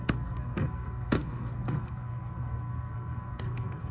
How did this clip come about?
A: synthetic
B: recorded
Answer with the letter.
A